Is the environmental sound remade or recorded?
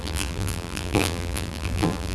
remade